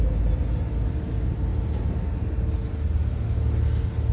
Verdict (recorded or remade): recorded